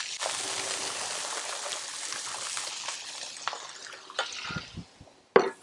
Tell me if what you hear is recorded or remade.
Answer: recorded